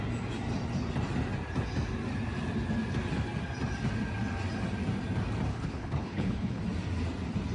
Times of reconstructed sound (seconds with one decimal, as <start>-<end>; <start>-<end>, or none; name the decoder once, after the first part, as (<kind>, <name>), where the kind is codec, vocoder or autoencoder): 5.5-6.6 (codec, HILCodec)